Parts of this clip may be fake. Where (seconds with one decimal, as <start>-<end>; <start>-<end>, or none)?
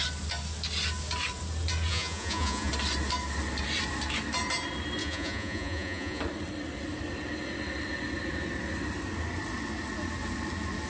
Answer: 1.9-2.7; 5.0-6.2